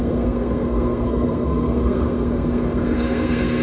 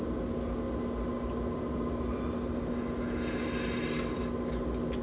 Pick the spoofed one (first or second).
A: first